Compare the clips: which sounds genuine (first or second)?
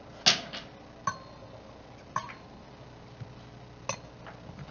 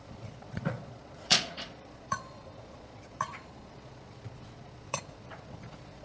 first